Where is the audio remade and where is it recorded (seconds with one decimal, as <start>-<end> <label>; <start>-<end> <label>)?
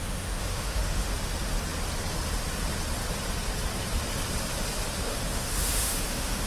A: 0.0-1.1 remade; 1.1-5.0 recorded; 5.0-6.5 remade